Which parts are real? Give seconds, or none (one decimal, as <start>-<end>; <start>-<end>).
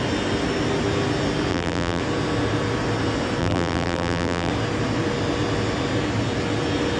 0.0-1.5; 2.0-3.4; 4.5-7.0